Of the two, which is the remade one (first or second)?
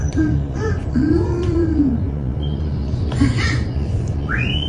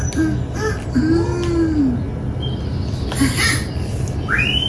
first